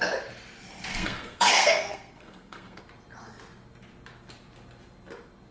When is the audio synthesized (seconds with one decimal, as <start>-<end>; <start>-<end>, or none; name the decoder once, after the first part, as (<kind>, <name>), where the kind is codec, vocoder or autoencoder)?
0.9-2.8 (codec, SNAC)